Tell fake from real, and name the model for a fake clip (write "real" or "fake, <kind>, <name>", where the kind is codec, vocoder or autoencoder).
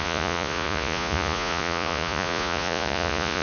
fake, vocoder, Vocos